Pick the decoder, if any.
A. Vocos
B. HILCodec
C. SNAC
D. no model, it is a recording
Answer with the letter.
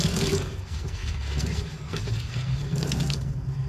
C